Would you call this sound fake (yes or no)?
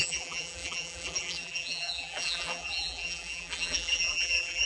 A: yes